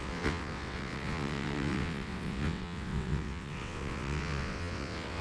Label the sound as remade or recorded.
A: remade